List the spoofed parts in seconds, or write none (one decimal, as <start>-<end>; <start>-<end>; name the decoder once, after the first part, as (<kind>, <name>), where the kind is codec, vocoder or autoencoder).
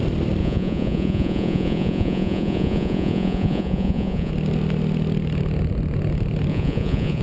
0.4-4.3 (vocoder, Vocos); 6.5-7.2